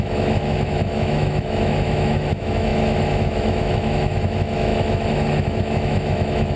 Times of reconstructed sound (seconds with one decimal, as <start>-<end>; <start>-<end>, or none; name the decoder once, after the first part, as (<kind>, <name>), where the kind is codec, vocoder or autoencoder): 0.0-6.6 (autoencoder, DAC-VAE)